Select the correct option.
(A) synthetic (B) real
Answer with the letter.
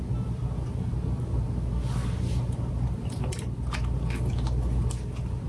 B